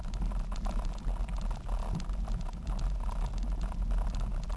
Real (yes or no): yes